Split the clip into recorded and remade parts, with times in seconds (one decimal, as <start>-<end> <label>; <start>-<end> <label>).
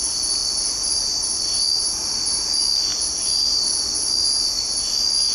0.0-5.3 recorded